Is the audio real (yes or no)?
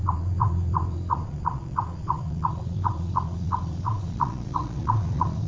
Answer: no